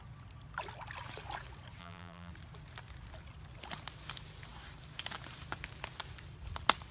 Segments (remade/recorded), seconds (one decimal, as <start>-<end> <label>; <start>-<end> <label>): 0.0-1.8 recorded; 1.8-2.3 remade; 2.3-6.9 recorded

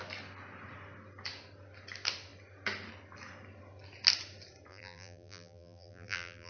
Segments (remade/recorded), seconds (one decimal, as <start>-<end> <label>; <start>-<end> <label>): 0.0-4.7 recorded; 4.7-6.5 remade

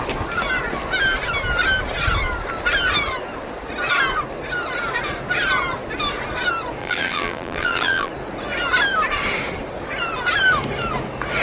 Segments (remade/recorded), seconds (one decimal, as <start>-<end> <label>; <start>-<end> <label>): 0.0-6.8 recorded; 6.8-8.1 remade; 8.1-11.4 recorded

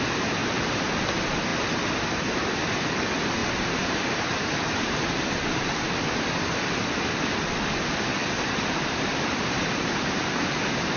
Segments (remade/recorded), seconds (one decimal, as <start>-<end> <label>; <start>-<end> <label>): 0.0-0.4 recorded; 0.4-1.0 remade; 1.0-3.4 recorded; 3.4-5.8 remade; 5.8-8.2 recorded; 8.2-10.3 remade; 10.3-11.0 recorded

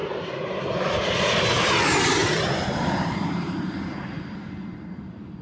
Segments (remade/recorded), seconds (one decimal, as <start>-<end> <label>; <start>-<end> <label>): 0.0-0.6 remade; 0.6-2.2 recorded; 2.2-3.6 remade; 3.6-5.4 recorded

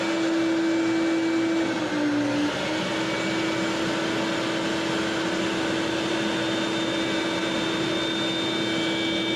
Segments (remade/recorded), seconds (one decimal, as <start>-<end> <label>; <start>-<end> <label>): 0.0-9.4 recorded

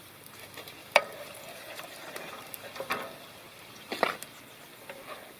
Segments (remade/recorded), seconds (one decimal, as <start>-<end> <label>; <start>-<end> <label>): 0.0-4.7 remade; 4.7-5.4 recorded

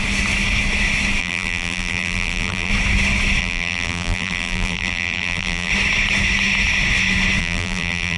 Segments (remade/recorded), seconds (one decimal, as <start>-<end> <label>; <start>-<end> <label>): 0.0-1.2 recorded; 1.2-2.7 remade; 2.7-3.4 recorded; 3.4-5.7 remade; 5.7-7.4 recorded; 7.4-8.2 remade